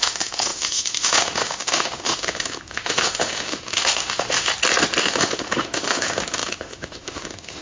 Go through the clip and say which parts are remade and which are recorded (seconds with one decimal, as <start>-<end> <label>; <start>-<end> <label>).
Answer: 0.0-4.5 remade; 4.5-5.0 recorded; 5.0-7.6 remade